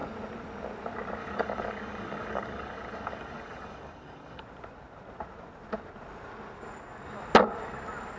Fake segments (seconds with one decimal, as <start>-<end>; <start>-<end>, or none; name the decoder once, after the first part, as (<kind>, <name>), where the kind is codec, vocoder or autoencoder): 1.2-4.4 (codec, DAC)